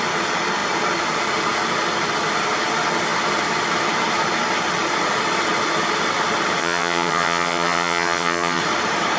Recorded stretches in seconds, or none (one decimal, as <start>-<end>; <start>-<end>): 0.0-6.6; 8.6-9.2